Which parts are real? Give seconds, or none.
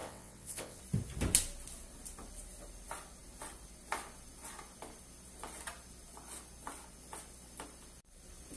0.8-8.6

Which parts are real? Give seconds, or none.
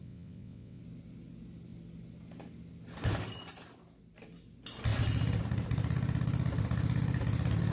0.8-7.7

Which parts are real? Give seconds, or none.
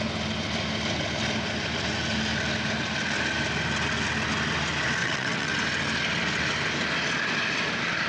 0.0-5.0; 5.5-8.1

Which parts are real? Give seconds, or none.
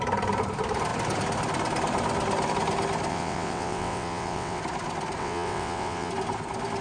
0.0-3.1; 4.6-5.2; 6.1-6.8